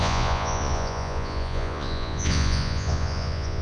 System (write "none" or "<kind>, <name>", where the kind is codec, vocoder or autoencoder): vocoder, Vocos